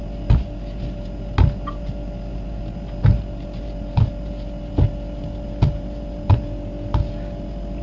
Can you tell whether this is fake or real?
real